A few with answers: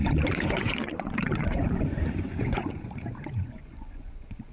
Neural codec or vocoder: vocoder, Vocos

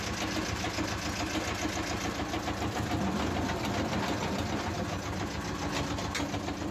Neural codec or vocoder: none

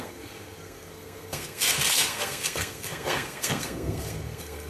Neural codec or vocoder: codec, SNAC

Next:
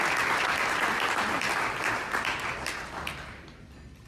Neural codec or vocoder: none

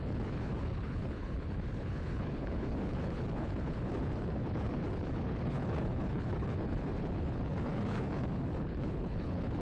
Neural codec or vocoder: codec, HILCodec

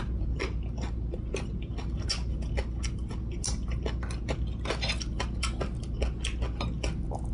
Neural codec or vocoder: none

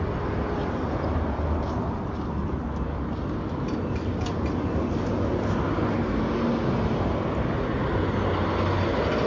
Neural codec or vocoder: none